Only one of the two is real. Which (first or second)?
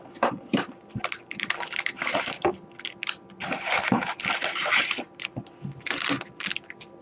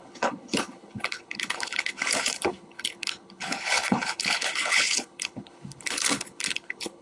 first